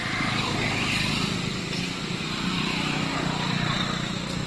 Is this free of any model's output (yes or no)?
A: yes